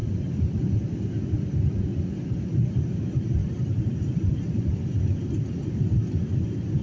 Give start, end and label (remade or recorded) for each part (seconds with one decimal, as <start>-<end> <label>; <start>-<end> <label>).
0.0-6.8 recorded